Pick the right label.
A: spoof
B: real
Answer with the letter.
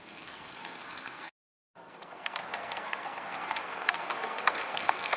A